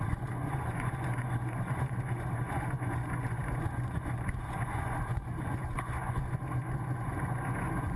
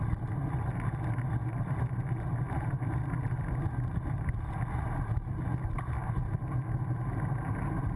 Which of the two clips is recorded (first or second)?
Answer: second